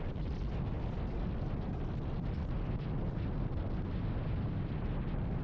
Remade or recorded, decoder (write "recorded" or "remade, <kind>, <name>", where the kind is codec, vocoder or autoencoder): recorded